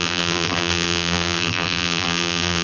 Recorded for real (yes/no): no